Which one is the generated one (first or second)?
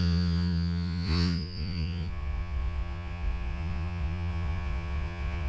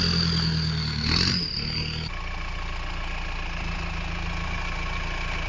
first